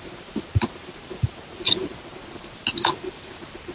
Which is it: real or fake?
real